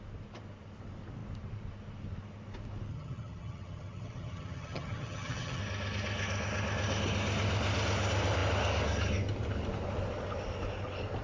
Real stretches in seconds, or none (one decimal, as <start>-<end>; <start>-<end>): 0.0-2.9; 5.6-11.2